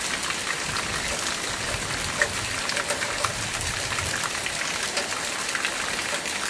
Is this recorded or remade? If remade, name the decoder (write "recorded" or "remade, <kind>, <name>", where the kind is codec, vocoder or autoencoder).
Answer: recorded